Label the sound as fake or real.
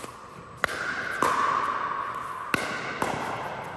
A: real